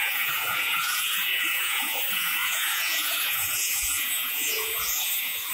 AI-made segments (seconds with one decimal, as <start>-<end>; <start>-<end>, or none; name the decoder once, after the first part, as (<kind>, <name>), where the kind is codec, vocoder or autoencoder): 0.0-5.5 (vocoder, Vocos)